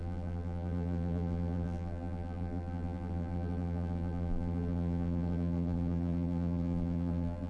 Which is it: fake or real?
fake